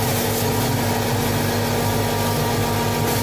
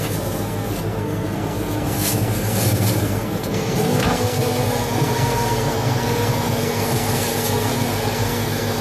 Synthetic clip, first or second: second